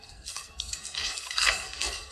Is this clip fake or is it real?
fake